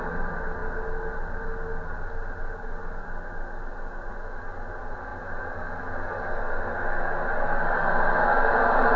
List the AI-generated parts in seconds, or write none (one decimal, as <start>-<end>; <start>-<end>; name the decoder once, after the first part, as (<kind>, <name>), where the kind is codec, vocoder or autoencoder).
none